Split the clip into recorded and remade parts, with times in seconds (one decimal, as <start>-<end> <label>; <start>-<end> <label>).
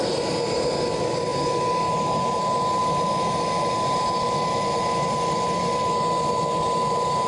0.0-7.3 recorded